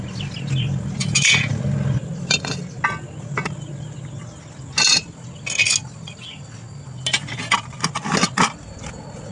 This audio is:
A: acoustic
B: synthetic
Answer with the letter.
A